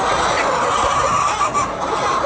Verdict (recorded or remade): recorded